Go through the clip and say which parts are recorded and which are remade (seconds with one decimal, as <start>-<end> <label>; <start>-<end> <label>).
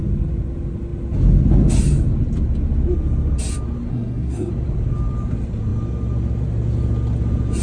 0.0-3.9 recorded; 3.9-4.5 remade; 4.5-7.6 recorded